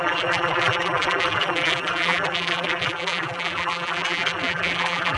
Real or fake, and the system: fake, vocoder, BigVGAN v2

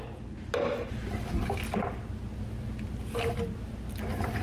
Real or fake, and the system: real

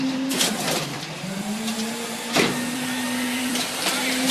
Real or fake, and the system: fake, vocoder, BigVGAN v2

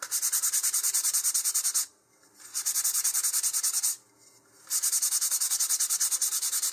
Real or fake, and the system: real